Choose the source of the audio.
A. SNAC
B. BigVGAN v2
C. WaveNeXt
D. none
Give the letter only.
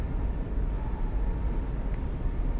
D